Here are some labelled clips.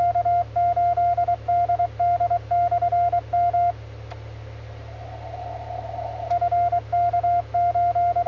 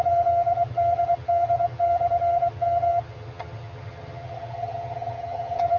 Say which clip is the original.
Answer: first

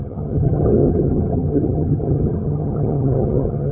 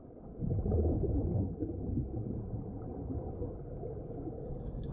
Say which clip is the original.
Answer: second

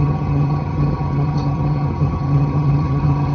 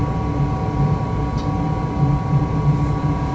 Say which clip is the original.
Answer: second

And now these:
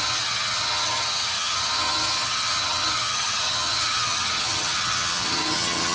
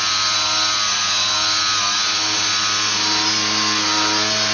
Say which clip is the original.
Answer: second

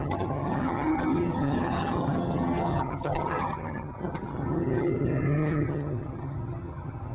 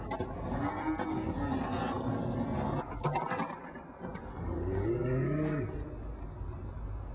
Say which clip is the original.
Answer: second